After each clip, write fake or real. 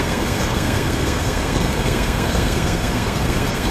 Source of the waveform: fake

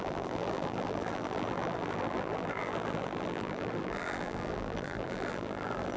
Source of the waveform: fake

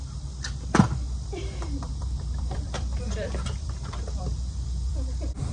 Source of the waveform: fake